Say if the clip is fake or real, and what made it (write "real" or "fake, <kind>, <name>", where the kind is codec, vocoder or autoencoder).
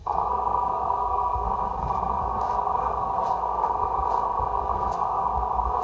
fake, codec, SNAC